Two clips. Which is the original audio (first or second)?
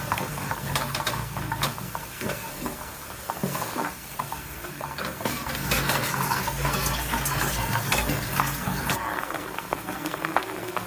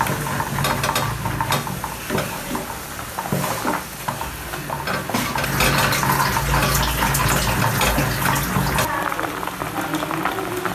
second